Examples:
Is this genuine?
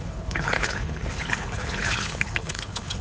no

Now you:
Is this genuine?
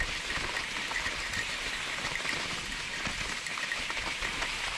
yes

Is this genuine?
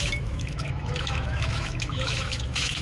no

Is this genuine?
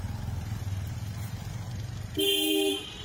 no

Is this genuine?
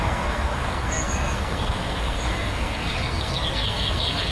no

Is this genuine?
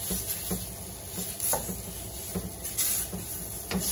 yes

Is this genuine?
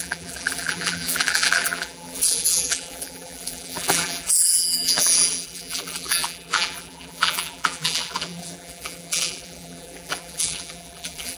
no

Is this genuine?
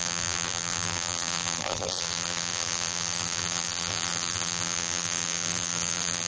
no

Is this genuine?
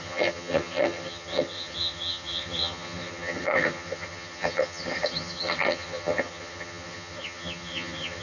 no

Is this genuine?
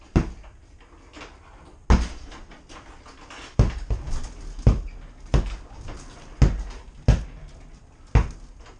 yes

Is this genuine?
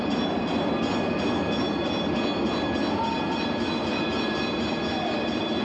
yes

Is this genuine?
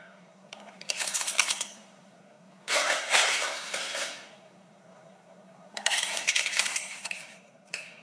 no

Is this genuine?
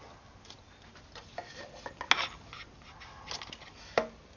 yes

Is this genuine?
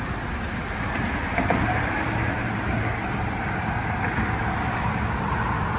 yes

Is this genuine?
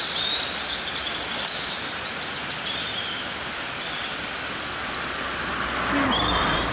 yes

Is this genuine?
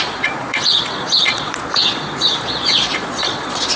no